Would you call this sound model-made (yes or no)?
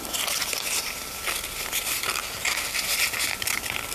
no